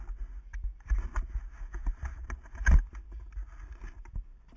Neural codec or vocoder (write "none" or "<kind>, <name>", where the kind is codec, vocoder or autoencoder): none